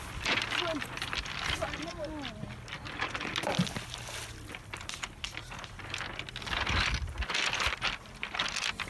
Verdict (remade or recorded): recorded